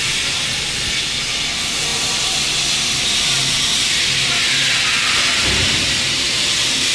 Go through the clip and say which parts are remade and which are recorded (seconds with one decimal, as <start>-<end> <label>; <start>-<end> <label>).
0.0-6.9 recorded